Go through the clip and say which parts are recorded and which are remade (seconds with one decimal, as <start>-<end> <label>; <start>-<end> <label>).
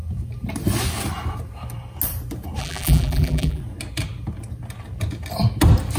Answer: 0.0-2.6 recorded; 2.6-3.6 remade; 3.6-6.0 recorded